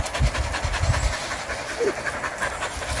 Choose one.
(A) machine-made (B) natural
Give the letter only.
B